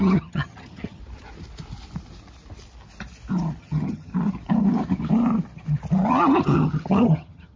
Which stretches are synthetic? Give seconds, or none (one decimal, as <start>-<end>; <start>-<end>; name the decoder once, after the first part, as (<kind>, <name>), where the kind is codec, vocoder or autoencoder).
0.0-1.0 (vocoder, HiFi-GAN); 3.6-4.1; 6.3-7.6